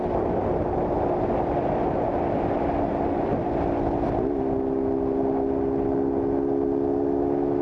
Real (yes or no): yes